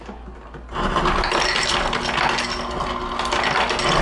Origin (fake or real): real